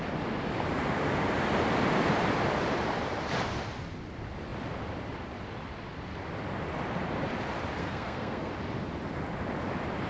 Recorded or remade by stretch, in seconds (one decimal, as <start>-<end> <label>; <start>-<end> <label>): 0.0-7.8 recorded; 7.8-8.5 remade; 8.5-10.1 recorded